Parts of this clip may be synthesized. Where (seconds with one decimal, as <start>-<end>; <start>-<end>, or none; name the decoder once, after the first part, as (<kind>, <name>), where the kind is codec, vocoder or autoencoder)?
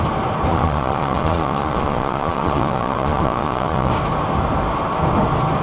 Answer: 0.5-3.9 (vocoder, Vocos)